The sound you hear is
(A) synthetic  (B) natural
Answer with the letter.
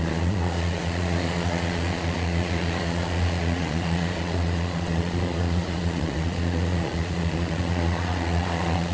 A